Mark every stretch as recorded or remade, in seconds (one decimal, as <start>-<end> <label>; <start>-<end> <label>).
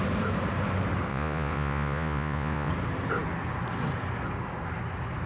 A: 0.0-1.1 recorded; 1.1-2.7 remade; 2.7-5.3 recorded